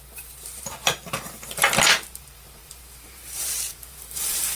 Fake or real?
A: fake